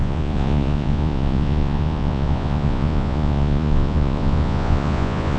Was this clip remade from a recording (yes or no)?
yes